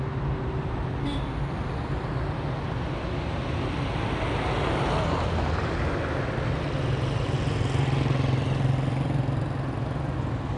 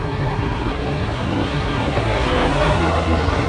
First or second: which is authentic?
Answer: first